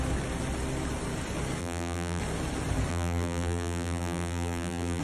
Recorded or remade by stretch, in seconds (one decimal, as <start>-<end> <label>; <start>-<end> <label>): 0.0-1.6 recorded; 1.6-2.2 remade; 2.2-2.9 recorded; 2.9-5.0 remade